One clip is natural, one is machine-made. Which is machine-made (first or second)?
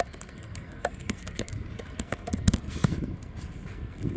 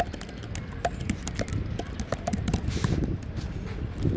first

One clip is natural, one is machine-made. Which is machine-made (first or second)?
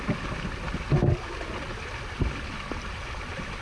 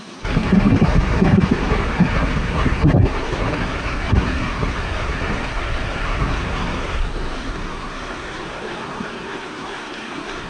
second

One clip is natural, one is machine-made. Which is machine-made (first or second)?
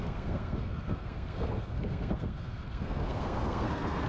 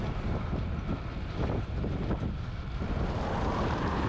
first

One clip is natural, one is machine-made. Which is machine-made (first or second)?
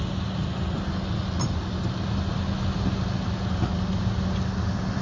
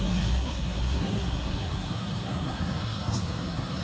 second